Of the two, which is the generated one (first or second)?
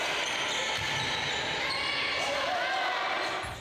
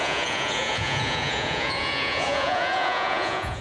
second